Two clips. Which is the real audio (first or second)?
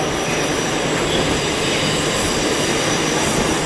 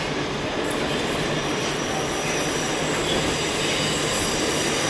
second